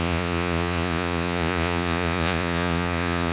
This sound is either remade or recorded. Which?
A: remade